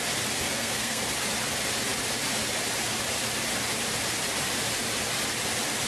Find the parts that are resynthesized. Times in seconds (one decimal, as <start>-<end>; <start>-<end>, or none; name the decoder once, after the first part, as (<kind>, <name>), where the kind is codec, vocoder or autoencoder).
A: 0.4-1.0 (codec, SNAC)